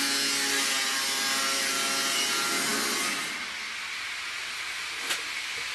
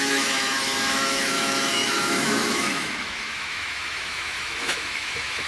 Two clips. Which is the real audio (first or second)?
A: first